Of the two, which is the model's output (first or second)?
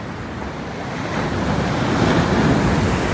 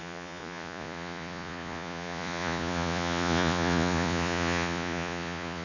second